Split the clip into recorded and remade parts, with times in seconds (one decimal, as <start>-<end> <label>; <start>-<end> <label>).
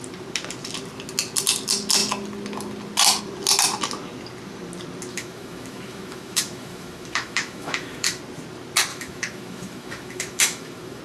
0.0-5.1 recorded; 5.1-8.2 remade; 8.2-8.9 recorded; 8.9-11.0 remade